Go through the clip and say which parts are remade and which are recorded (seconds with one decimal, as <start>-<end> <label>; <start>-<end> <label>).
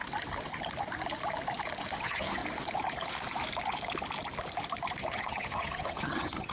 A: 0.0-2.0 recorded; 2.0-2.4 remade; 2.4-5.0 recorded; 5.0-6.5 remade